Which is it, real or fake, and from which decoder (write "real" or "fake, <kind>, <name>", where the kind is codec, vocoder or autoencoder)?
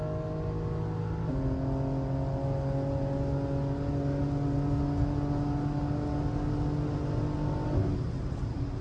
real